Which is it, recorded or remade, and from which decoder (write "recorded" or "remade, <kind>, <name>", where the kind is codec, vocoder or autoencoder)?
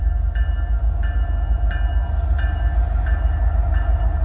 recorded